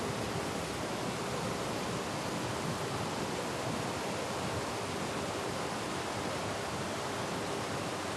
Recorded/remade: recorded